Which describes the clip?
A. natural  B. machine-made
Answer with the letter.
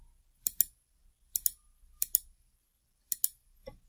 A